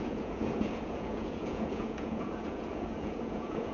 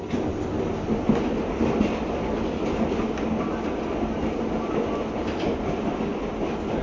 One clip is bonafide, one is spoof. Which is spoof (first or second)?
first